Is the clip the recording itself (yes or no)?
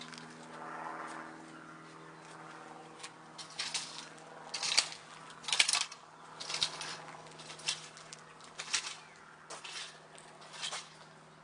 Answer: yes